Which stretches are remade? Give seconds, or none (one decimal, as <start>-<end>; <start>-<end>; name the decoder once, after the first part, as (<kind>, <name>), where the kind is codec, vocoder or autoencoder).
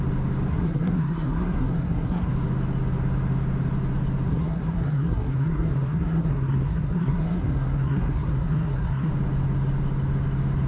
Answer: 0.5-2.3 (codec, SNAC); 4.3-9.1